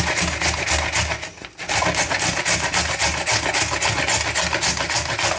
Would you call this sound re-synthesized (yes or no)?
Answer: no